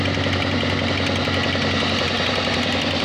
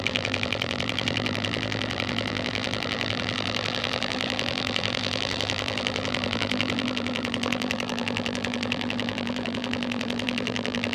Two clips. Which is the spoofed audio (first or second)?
second